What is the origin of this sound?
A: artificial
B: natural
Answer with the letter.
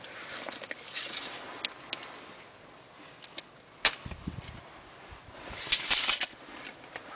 B